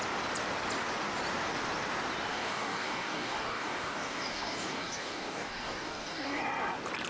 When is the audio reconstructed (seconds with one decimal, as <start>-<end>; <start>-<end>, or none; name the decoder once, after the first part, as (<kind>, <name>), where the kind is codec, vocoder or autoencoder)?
2.3-6.4 (codec, DAC)